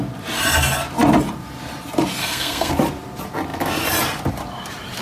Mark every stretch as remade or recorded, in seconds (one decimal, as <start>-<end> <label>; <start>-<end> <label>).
0.0-2.2 recorded; 2.2-2.7 remade; 2.7-5.0 recorded